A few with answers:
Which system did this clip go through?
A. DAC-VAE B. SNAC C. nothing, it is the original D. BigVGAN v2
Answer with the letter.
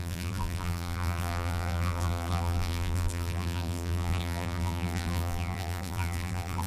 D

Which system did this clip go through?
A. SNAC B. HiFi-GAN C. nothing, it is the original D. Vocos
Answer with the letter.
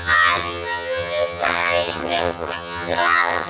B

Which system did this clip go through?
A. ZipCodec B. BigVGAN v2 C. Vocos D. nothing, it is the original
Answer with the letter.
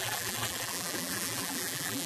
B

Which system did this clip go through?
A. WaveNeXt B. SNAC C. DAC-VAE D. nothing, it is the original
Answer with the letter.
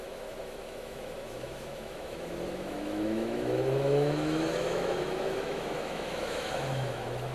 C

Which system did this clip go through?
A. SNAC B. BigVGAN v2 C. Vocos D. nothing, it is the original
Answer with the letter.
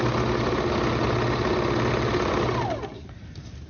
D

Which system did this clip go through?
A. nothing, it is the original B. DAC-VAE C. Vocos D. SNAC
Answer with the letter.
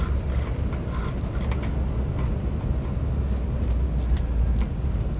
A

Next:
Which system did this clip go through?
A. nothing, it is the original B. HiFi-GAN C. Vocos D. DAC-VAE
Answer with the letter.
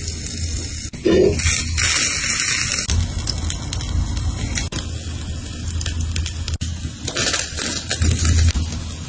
A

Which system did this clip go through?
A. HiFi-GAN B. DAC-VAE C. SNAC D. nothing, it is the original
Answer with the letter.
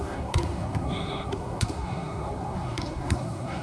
C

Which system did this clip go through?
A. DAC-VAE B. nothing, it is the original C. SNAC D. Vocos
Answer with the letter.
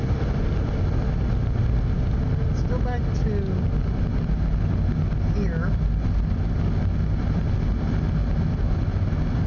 B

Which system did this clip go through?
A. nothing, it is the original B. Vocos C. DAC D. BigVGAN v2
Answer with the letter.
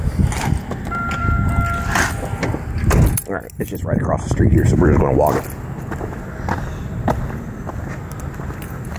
A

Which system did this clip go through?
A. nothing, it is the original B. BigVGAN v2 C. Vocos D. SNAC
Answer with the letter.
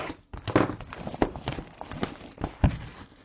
A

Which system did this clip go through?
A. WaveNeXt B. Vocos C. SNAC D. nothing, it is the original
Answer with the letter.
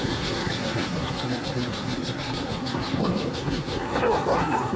C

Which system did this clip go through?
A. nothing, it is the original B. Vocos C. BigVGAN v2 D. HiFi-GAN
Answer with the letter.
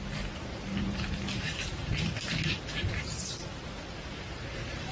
C